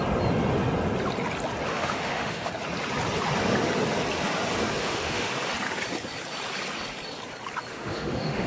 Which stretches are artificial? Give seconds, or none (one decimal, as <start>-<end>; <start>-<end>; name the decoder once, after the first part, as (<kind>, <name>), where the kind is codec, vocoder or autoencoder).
1.7-2.5 (autoencoder, DAC-VAE); 4.8-5.3; 7.7-8.5